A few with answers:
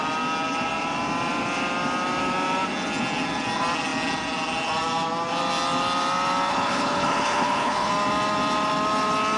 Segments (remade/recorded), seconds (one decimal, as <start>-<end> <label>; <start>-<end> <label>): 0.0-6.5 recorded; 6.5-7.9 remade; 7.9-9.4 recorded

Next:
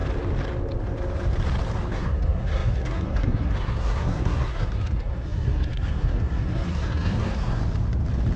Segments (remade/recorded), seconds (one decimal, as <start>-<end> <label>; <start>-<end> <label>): 0.0-1.9 recorded; 1.9-7.6 remade; 7.6-8.4 recorded

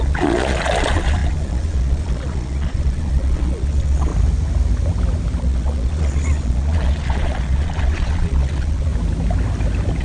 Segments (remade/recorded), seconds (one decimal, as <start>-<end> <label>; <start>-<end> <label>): 0.0-4.1 remade; 4.1-5.4 recorded; 5.4-8.9 remade; 8.9-10.0 recorded

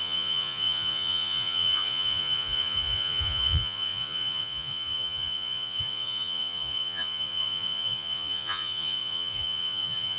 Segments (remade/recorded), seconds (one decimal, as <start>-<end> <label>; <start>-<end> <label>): 0.0-10.2 remade

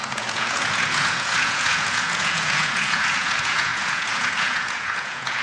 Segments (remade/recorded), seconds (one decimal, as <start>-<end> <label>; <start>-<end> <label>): 0.0-5.4 remade